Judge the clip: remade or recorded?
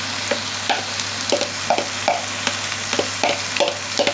recorded